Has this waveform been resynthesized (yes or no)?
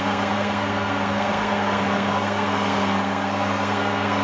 yes